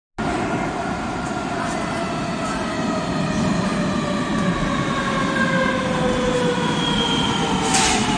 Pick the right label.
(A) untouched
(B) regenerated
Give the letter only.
A